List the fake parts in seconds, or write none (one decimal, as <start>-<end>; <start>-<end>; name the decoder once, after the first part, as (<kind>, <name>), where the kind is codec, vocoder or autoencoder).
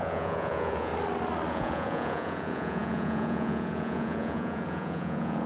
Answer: 0.0-0.9 (vocoder, Vocos); 1.5-5.5